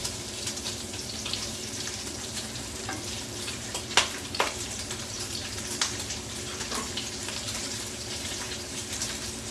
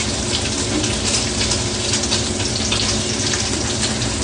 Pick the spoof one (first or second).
first